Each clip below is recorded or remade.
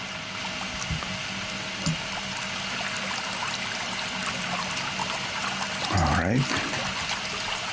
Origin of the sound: recorded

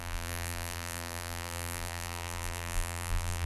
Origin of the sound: remade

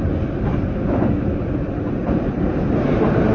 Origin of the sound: recorded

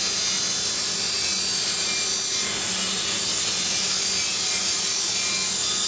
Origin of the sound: recorded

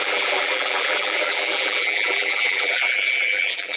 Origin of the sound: remade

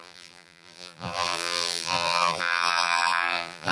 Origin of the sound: remade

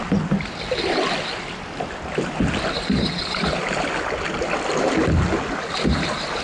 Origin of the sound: recorded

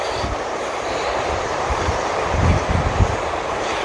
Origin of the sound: remade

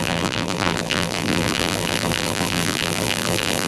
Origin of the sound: remade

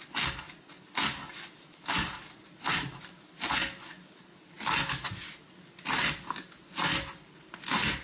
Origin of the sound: recorded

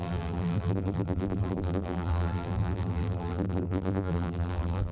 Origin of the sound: remade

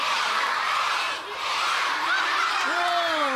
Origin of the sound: remade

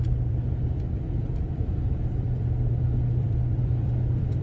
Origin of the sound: remade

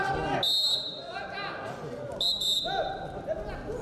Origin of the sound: recorded